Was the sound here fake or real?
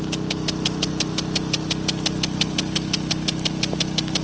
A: real